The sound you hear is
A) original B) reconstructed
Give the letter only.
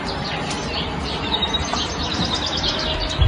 A